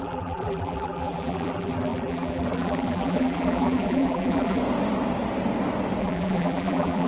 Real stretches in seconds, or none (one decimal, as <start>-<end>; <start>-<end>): 4.6-6.0